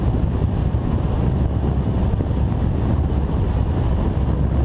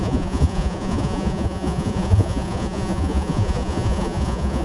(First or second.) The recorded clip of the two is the first